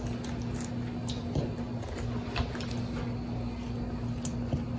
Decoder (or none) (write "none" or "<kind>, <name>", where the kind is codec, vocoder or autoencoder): none